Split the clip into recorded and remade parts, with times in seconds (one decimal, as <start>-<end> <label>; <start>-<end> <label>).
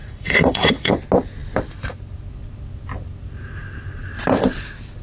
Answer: 0.0-0.9 remade; 0.9-5.0 recorded